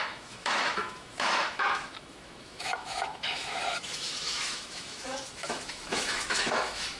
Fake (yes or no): yes